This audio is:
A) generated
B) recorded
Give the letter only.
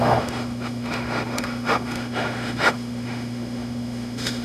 A